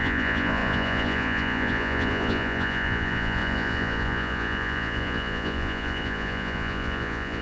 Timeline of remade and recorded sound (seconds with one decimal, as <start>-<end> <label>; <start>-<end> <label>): 0.0-7.4 remade